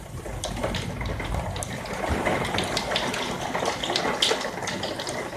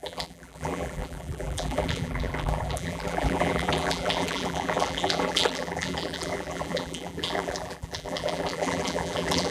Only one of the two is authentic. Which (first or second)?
first